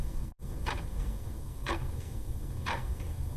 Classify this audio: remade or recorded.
remade